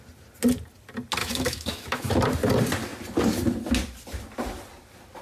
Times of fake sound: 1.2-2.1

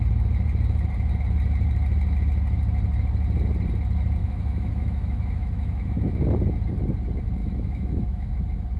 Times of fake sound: 4.2-6.1; 7.4-8.3

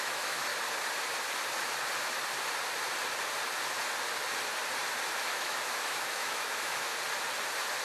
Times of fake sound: 0.0-0.5; 5.1-6.9

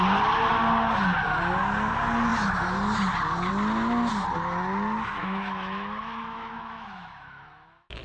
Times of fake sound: 5.2-8.0

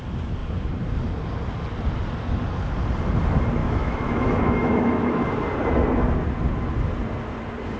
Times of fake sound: 3.6-5.1